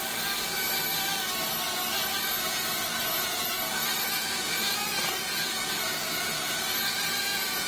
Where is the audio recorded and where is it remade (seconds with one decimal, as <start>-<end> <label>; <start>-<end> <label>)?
0.0-2.0 recorded; 2.0-2.6 remade; 2.6-3.0 recorded; 3.0-7.7 remade